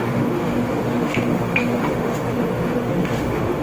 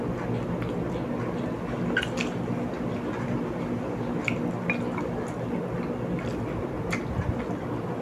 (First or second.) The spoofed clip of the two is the first